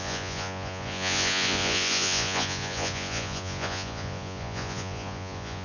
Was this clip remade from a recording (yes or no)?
yes